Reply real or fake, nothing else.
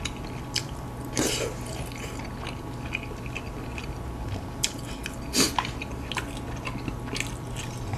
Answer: real